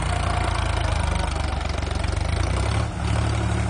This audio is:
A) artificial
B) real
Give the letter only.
B